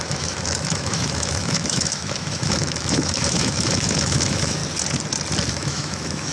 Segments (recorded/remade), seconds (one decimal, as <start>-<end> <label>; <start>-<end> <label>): 0.0-4.6 remade; 4.6-5.5 recorded; 5.5-6.3 remade